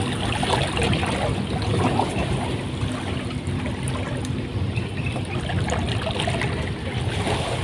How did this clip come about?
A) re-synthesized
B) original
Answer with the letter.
B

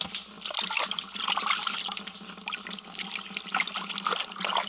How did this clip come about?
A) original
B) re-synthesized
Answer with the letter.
A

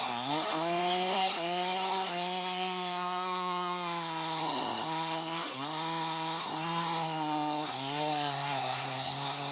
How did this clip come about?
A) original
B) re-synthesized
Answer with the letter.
B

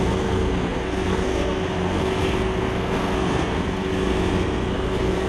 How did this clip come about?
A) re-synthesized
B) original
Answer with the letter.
A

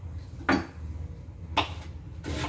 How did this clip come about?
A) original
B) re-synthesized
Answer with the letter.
A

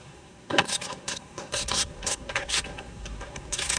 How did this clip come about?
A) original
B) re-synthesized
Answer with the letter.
B